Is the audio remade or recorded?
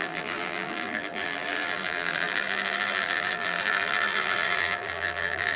remade